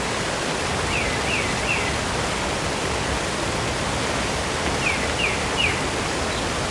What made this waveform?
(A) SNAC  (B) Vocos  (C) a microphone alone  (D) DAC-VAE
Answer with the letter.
C